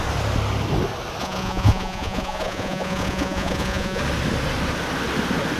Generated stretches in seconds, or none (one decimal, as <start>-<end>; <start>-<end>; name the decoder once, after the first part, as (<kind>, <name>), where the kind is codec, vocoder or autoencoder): 1.2-4.0 (vocoder, Vocos)